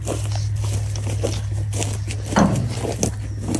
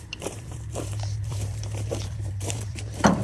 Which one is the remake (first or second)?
second